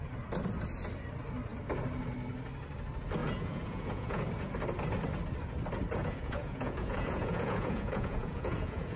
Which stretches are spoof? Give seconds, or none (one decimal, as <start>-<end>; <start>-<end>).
3.2-4.2; 6.0-9.0